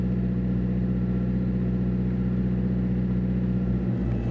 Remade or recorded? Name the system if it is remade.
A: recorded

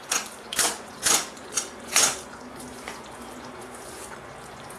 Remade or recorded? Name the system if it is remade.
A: remade, vocoder, Vocos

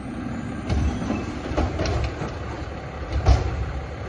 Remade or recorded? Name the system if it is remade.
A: recorded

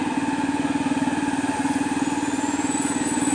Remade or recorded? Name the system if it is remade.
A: remade, vocoder, Vocos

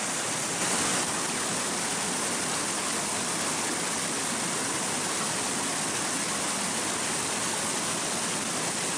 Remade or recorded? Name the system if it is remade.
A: recorded